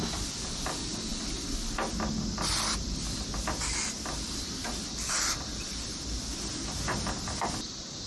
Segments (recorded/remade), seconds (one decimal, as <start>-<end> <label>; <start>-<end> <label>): 0.0-8.1 recorded